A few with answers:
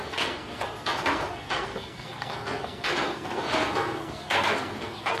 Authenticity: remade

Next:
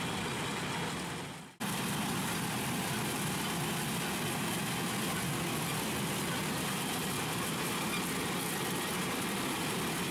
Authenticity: recorded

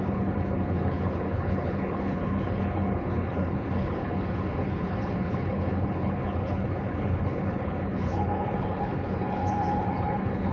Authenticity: remade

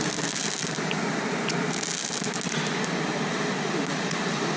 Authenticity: recorded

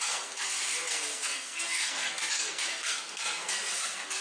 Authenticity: remade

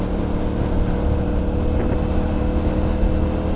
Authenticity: recorded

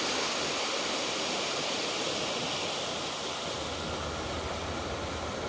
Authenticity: recorded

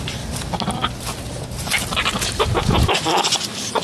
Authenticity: recorded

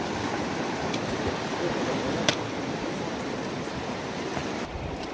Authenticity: remade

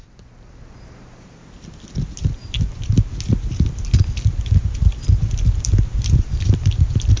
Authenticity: recorded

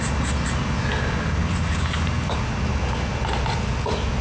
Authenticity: recorded